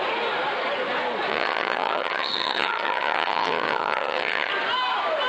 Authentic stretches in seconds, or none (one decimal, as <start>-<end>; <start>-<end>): 0.0-1.3; 4.5-5.3